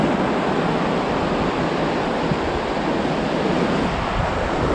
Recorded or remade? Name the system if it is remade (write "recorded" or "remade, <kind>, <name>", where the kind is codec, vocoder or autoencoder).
recorded